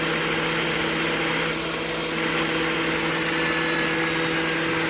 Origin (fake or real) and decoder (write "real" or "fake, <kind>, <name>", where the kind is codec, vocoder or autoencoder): real